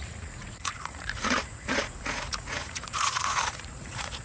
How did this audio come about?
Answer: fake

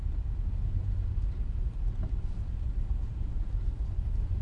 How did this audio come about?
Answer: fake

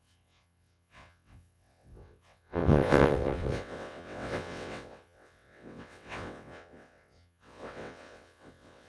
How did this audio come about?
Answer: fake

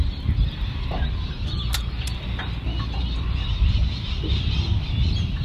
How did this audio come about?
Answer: real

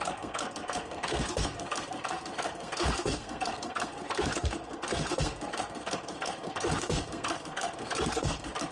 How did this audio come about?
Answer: fake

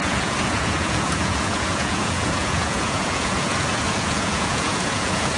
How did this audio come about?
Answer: fake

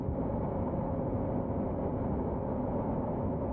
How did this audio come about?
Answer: real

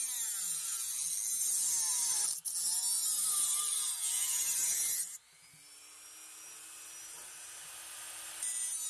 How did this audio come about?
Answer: real